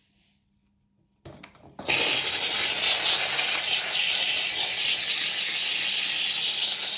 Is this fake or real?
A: real